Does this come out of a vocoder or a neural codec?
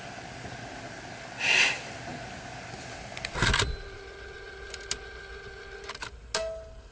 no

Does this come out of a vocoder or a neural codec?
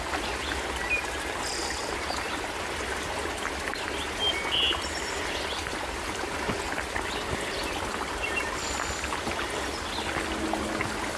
no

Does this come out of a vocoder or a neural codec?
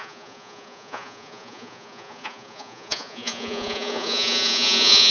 yes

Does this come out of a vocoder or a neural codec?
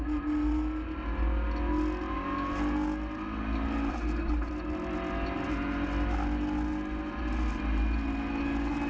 no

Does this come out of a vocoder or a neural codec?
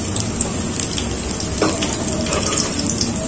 no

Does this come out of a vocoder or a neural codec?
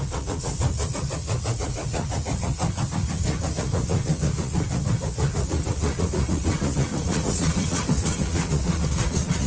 yes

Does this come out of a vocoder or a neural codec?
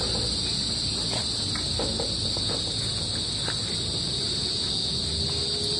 no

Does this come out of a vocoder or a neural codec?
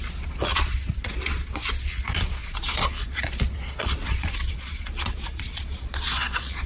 yes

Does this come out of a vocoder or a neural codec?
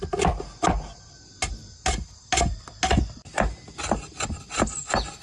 no